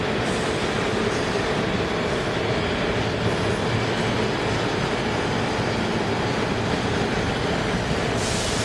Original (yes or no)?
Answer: yes